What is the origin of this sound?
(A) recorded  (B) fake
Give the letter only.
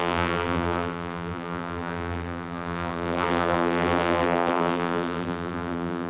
B